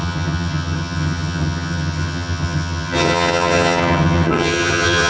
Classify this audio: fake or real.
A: fake